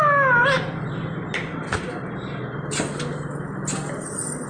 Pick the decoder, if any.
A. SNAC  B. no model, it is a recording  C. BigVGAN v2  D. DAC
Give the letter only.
B